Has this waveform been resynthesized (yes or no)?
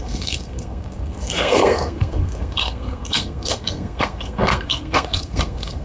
yes